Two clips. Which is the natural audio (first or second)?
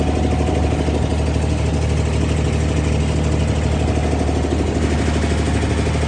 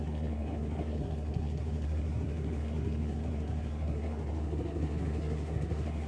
first